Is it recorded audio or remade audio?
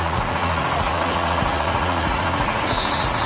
remade